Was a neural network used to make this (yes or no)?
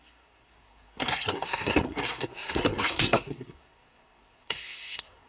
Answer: yes